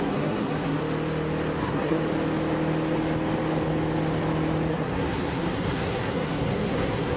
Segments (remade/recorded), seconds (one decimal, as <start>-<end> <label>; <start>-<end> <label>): 0.0-0.8 remade; 0.8-1.6 recorded; 1.6-2.0 remade; 2.0-4.7 recorded; 4.7-7.2 remade